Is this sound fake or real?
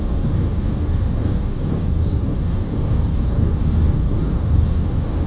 fake